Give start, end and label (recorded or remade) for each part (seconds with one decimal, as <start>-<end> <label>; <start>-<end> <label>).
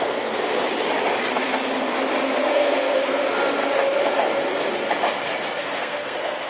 0.0-0.5 remade; 0.5-2.5 recorded; 2.5-3.2 remade; 3.2-5.6 recorded; 5.6-6.5 remade